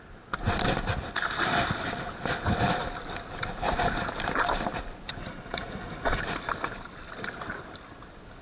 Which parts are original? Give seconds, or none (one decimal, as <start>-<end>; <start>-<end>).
0.0-5.2; 6.2-8.4